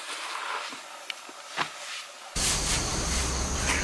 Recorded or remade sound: recorded